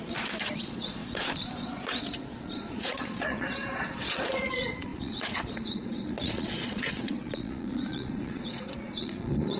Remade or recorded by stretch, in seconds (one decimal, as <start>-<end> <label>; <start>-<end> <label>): 0.0-9.6 remade